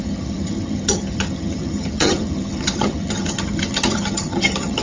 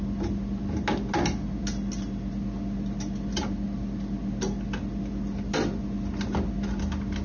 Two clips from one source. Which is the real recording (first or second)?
second